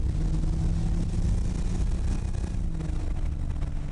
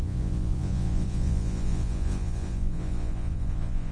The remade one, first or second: second